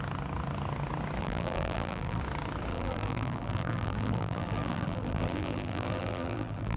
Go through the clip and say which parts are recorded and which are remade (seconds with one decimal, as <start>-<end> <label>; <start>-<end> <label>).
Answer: 0.0-1.2 recorded; 1.2-2.2 remade; 2.2-2.7 recorded; 2.7-6.8 remade